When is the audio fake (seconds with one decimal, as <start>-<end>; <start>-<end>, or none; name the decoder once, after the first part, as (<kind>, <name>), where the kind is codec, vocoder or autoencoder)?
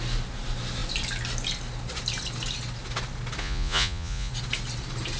3.4-4.3 (vocoder, Vocos)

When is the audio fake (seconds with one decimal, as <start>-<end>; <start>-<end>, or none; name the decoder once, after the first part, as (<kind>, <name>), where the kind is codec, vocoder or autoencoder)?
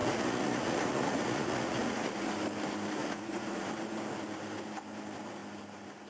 0.0-2.3 (vocoder, Vocos); 3.0-3.7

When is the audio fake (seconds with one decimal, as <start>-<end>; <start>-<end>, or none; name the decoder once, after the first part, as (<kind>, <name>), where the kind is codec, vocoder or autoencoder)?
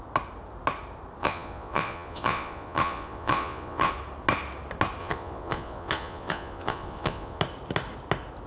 1.2-3.9 (vocoder, Vocos); 5.0-7.4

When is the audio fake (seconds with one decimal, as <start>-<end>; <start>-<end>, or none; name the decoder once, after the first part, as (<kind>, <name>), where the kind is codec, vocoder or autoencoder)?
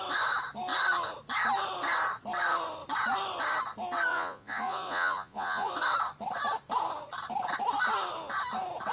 4.1-5.7 (vocoder, Vocos)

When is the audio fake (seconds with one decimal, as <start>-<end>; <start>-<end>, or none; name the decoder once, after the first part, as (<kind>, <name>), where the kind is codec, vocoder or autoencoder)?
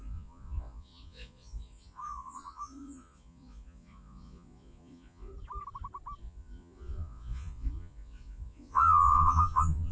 0.0-5.3 (vocoder, Vocos); 6.2-9.9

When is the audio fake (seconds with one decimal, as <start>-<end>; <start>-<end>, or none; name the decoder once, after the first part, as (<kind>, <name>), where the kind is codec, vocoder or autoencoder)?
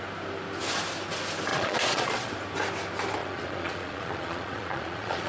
1.5-2.3 (vocoder, Vocos); 3.2-5.3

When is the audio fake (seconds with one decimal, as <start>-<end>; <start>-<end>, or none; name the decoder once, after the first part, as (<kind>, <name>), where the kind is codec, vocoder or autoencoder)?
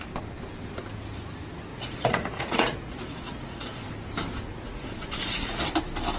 1.7-3.8 (vocoder, Vocos); 4.5-5.6